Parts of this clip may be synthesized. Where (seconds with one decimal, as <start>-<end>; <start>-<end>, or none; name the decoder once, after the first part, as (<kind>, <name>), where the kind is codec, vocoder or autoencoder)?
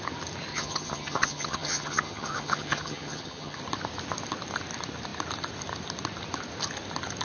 0.5-3.6 (vocoder, HiFi-GAN)